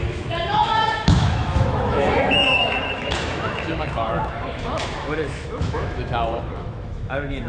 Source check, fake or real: fake